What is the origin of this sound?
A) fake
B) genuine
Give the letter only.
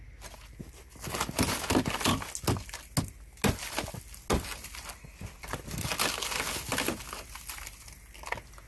B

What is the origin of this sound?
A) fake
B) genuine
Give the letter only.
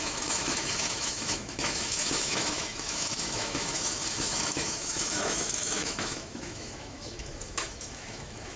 A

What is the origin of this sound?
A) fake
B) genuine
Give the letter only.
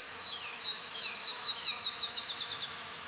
A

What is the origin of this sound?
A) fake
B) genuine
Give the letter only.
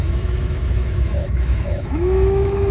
A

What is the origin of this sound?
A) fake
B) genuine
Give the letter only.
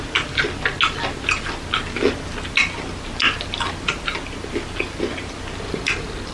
B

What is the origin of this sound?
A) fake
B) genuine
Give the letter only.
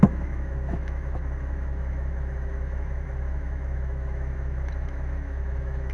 A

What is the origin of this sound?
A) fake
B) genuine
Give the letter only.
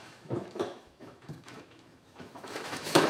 A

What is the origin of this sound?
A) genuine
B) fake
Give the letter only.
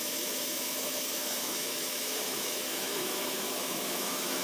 B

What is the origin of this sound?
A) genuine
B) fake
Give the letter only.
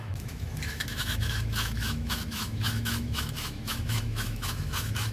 B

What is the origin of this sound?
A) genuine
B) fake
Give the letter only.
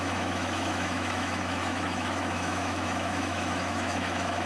B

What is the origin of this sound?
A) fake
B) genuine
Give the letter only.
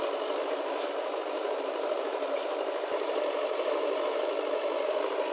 B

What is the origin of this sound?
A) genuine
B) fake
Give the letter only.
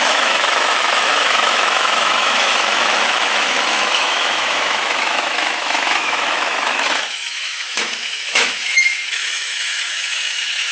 B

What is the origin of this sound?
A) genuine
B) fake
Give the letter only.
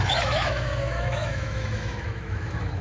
B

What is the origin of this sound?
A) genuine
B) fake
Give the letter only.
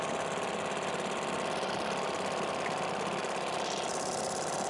A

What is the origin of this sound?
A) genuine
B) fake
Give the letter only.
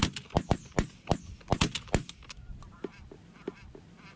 A